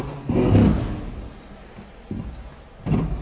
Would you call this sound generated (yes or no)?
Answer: no